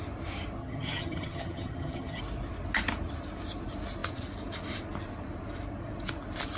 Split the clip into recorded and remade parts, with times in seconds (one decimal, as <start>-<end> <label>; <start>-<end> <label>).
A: 0.0-0.6 recorded; 0.6-2.2 remade; 2.2-6.6 recorded